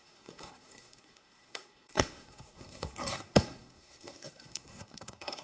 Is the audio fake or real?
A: fake